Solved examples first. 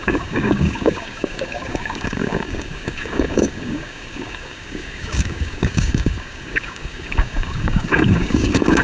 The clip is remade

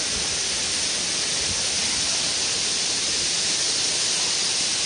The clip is recorded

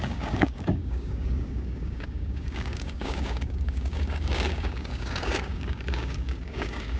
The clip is remade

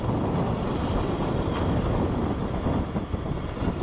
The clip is recorded